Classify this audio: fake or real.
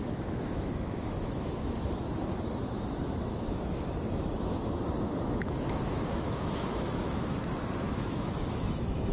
fake